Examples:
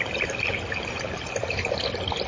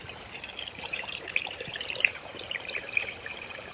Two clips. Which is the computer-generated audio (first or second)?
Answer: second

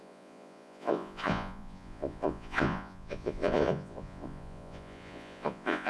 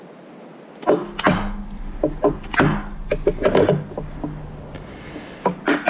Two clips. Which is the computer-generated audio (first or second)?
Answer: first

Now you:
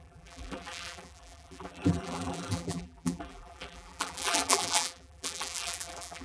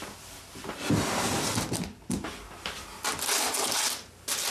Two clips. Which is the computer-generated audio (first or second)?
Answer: first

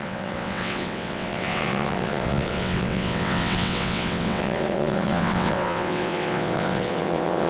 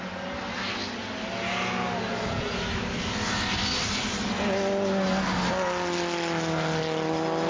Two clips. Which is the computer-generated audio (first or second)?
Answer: first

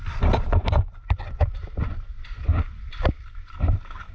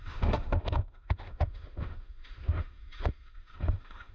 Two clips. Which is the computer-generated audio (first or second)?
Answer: second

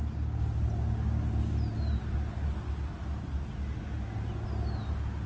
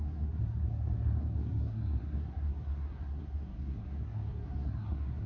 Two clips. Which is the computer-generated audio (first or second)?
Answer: second